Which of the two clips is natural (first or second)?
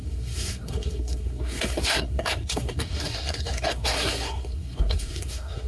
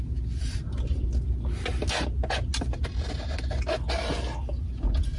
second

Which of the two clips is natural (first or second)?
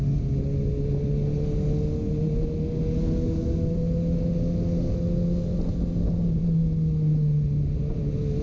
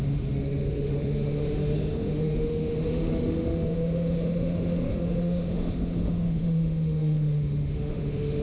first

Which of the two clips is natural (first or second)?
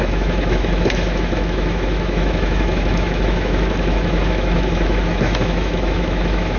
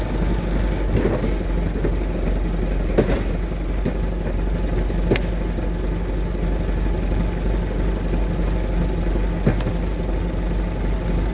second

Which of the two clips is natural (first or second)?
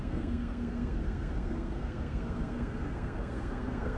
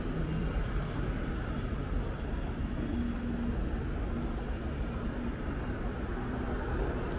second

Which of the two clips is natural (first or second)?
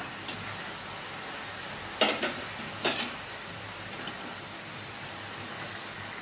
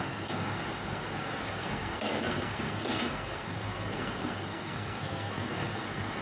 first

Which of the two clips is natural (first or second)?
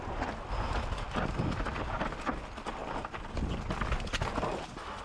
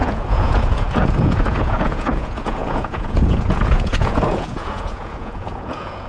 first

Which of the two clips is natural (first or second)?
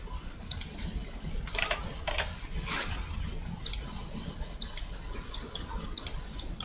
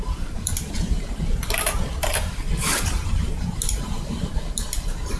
first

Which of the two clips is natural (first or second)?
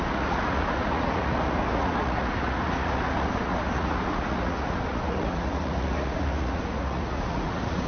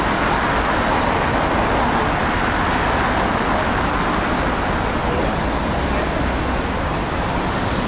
second